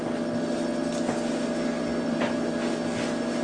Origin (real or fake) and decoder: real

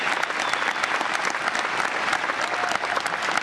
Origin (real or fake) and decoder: real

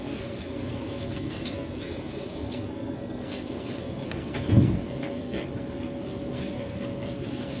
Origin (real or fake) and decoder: fake, codec, SNAC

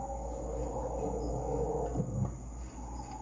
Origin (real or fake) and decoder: real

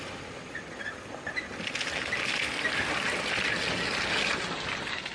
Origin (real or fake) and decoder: real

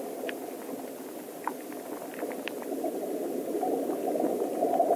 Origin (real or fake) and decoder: real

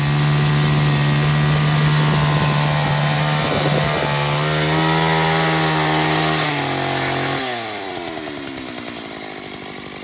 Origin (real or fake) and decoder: real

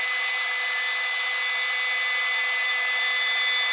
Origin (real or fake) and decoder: real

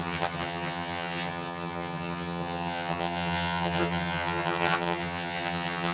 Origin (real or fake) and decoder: fake, vocoder, HiFi-GAN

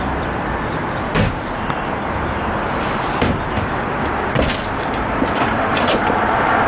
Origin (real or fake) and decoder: fake, vocoder, BigVGAN v2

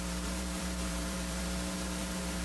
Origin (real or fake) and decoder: fake, vocoder, BigVGAN v2